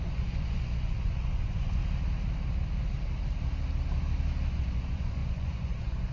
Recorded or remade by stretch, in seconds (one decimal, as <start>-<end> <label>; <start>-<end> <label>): 0.0-1.8 remade; 1.8-4.5 recorded; 4.5-6.1 remade